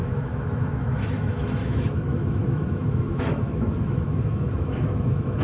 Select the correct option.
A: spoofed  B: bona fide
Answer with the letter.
A